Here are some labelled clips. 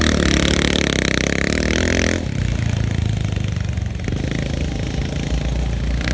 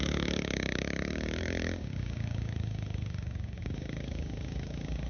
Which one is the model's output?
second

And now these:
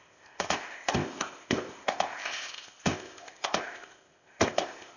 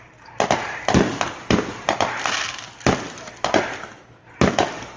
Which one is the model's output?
first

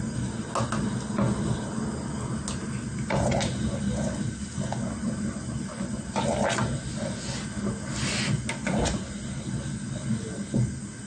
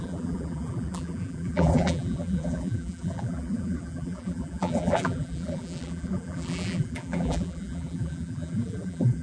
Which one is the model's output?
second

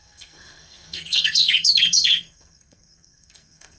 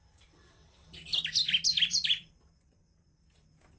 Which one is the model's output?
first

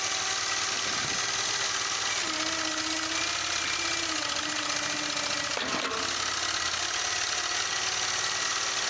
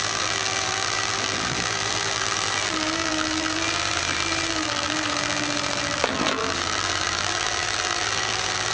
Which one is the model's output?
second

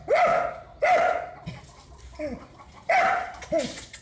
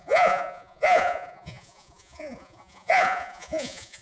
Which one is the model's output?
second